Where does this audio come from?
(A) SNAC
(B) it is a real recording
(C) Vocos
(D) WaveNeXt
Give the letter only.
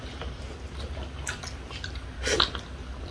B